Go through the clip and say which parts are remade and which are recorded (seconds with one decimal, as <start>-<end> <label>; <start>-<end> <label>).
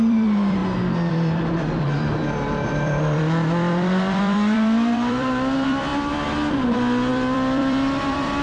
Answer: 0.0-0.6 remade; 0.6-1.1 recorded; 1.1-5.9 remade; 5.9-6.5 recorded; 6.5-8.4 remade